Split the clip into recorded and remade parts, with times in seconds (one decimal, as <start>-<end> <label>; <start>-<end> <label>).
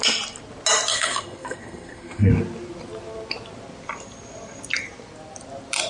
0.0-0.9 recorded; 0.9-2.3 remade; 2.3-5.9 recorded